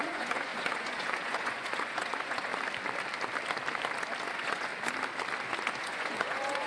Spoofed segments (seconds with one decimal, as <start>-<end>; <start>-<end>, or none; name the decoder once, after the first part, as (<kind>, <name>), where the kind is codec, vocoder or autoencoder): 0.0-2.5 (vocoder, Vocos); 4.3-4.7; 5.8-6.7